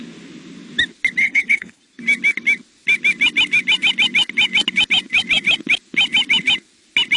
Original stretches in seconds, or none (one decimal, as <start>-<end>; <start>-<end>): 0.0-1.2; 1.8-7.2